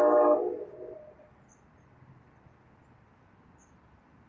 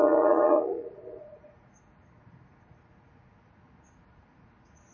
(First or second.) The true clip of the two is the first